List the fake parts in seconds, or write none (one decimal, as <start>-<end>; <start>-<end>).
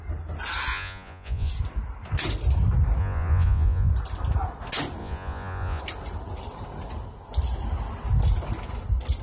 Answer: 0.7-1.5; 3.0-3.9; 5.0-5.8